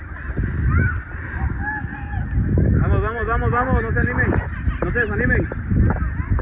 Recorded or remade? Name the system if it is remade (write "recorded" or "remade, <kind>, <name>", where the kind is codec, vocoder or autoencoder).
recorded